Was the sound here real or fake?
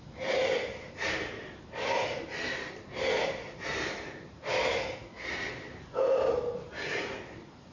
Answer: real